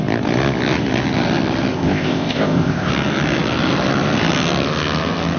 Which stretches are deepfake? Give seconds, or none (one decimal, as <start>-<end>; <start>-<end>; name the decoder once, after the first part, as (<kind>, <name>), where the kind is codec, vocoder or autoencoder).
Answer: 1.7-2.9 (codec, ZipCodec)